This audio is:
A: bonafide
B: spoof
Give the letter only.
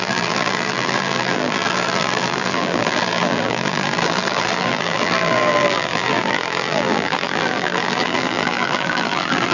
B